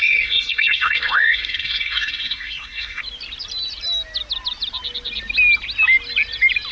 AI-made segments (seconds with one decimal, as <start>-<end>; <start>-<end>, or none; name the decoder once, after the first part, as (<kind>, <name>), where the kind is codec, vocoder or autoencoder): 0.0-3.0 (codec, SNAC)